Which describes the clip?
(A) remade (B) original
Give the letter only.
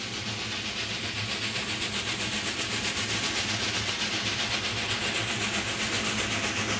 B